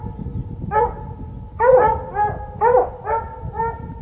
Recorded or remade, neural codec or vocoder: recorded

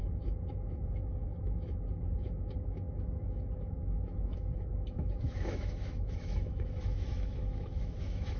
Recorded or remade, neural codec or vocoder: remade, autoencoder, DAC-VAE